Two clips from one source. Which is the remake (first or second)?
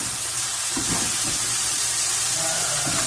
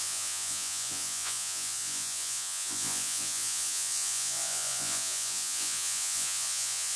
second